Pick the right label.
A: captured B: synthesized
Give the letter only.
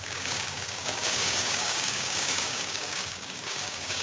B